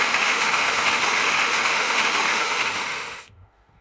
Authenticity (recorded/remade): remade